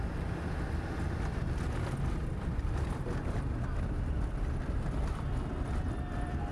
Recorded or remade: recorded